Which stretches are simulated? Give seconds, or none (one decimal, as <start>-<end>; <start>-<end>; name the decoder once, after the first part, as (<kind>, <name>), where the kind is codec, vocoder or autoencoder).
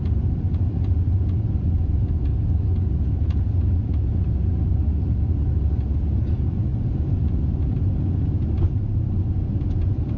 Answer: none